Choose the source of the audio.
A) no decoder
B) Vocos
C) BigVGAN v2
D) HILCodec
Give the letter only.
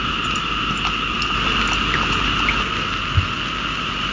A